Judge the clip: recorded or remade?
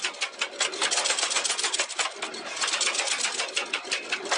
recorded